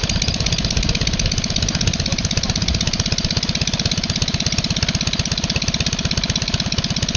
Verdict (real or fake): real